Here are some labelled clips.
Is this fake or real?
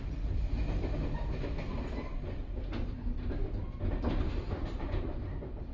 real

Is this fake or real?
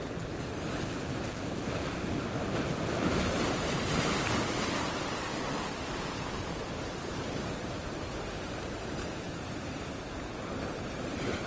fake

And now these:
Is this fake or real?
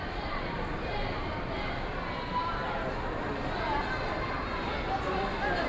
real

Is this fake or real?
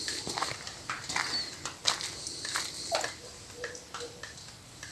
real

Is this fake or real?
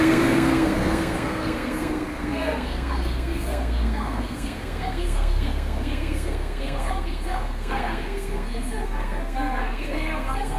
fake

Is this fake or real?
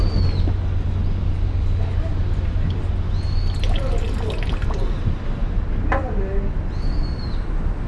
real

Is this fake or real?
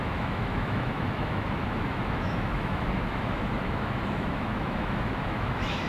fake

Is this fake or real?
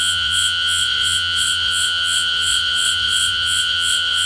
fake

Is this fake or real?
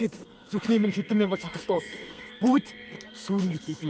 fake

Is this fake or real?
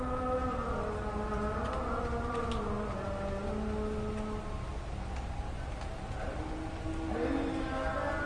real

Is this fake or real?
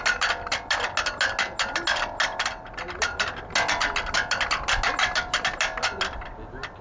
real